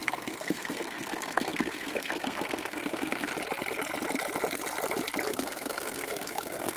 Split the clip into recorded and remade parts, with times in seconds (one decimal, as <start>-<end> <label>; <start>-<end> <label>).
0.0-3.3 remade; 3.3-5.3 recorded; 5.3-6.8 remade